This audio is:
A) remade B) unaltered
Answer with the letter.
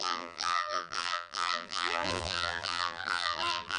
A